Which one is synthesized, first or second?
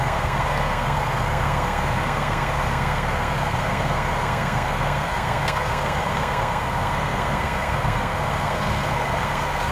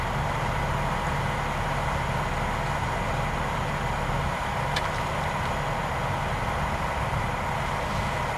first